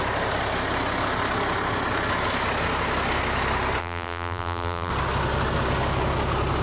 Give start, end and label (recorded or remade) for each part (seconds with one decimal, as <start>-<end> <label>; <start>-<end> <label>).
0.0-3.8 recorded; 3.8-4.9 remade; 4.9-6.6 recorded